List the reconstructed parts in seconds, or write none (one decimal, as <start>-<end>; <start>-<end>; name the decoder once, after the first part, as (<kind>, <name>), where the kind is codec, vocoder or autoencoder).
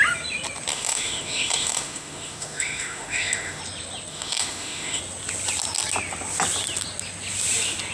0.7-3.6 (autoencoder, DAC-VAE); 4.1-5.0